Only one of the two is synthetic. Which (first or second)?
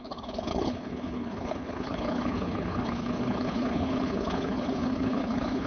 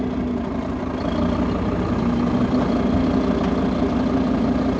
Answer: first